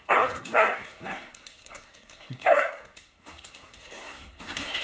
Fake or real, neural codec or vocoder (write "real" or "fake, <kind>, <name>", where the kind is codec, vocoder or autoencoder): fake, codec, SNAC